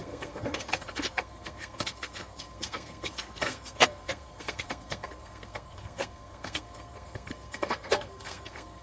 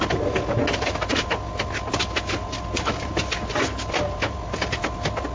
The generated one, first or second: first